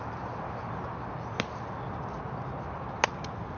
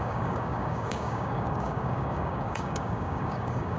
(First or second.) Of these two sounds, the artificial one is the second